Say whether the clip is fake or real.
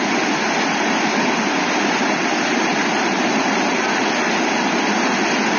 real